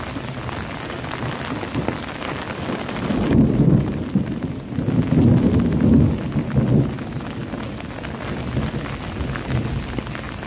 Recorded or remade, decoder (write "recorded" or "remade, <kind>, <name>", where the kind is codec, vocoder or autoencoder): recorded